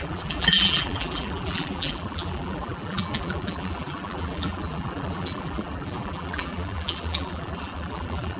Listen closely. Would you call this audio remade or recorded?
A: remade